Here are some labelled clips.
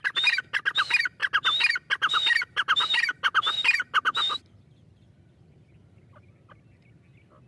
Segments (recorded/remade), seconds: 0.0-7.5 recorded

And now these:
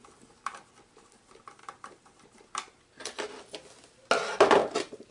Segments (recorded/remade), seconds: 0.0-1.6 recorded; 1.6-2.8 remade; 2.8-4.6 recorded; 4.6-5.1 remade

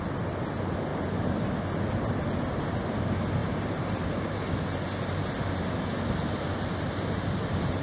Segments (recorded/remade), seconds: 0.0-0.9 recorded; 0.9-1.6 remade; 1.6-3.4 recorded; 3.4-4.4 remade; 4.4-7.8 recorded

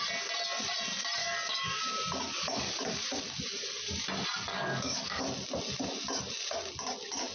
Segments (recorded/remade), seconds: 0.0-1.2 recorded; 1.2-1.8 remade; 1.8-4.5 recorded; 4.5-5.2 remade; 5.2-7.3 recorded

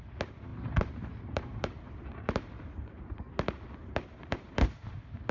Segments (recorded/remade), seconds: 0.0-0.5 recorded; 0.5-3.3 remade; 3.3-3.8 recorded; 3.8-4.5 remade; 4.5-5.3 recorded

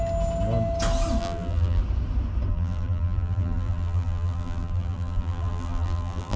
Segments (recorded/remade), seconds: 0.0-1.2 recorded; 1.2-1.8 remade; 1.8-2.5 recorded; 2.5-6.4 remade

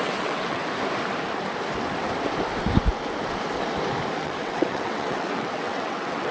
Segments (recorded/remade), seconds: 0.0-0.6 remade; 0.6-4.2 recorded; 4.2-6.3 remade